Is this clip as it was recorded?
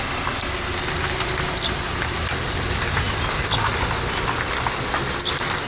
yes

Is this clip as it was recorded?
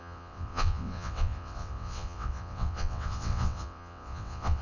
no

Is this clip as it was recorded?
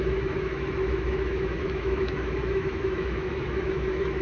no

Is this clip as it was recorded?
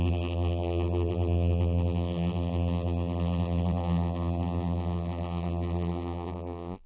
no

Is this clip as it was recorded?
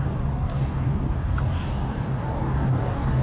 no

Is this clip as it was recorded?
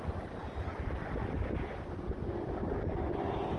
yes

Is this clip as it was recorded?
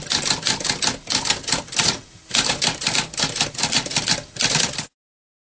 yes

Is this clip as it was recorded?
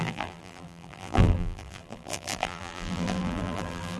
no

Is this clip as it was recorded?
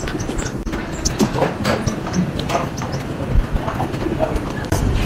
no